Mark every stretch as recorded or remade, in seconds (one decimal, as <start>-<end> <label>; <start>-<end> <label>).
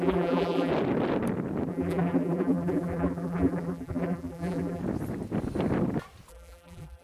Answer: 0.0-0.7 remade; 0.7-1.7 recorded; 1.7-4.8 remade; 4.8-6.3 recorded; 6.3-7.0 remade